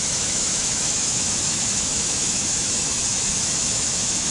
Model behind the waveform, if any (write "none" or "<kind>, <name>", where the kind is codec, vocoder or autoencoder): autoencoder, DAC-VAE